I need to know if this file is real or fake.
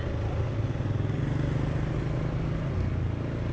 real